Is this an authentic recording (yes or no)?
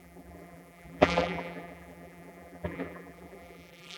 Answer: no